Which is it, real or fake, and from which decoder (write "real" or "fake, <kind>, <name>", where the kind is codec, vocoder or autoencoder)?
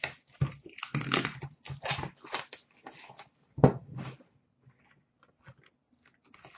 real